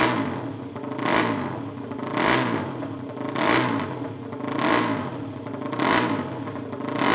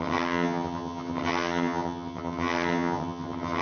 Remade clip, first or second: second